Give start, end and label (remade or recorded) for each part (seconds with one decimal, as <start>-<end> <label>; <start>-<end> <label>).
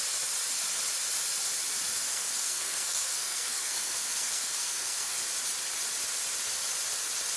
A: 0.0-2.1 recorded; 2.1-5.2 remade; 5.2-7.4 recorded